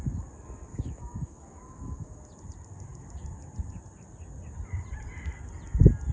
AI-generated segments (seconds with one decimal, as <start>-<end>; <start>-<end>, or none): 0.7-2.2